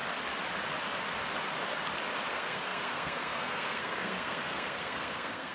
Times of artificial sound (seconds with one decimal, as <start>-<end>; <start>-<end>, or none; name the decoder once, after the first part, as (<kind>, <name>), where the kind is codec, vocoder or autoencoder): 2.3-5.5 (codec, SNAC)